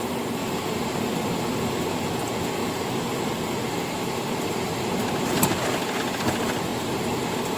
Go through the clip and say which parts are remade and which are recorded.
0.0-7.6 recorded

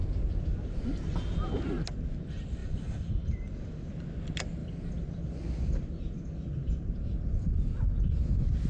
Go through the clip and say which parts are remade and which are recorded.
0.0-2.6 recorded; 2.6-3.9 remade; 3.9-4.6 recorded; 4.6-6.9 remade; 6.9-8.7 recorded